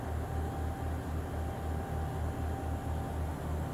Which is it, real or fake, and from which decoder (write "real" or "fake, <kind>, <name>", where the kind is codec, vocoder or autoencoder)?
real